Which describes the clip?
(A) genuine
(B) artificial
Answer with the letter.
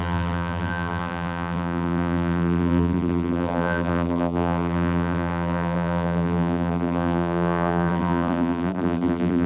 B